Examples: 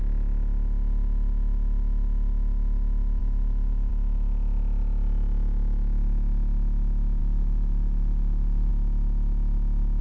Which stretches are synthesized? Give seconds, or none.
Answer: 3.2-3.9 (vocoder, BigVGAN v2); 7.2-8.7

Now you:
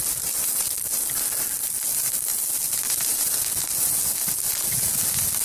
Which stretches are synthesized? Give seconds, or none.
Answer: none

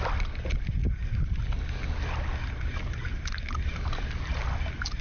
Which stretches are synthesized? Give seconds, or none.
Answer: none